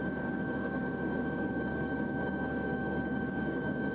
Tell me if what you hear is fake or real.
fake